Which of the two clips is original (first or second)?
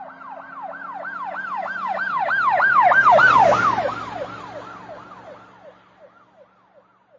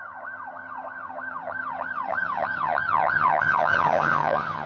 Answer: first